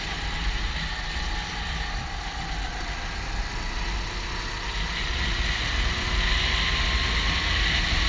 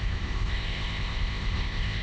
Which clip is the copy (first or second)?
second